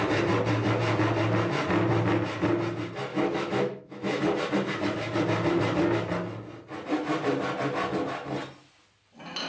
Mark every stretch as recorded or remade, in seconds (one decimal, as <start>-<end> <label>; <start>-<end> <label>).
0.0-3.1 recorded; 3.1-4.2 remade; 4.2-9.5 recorded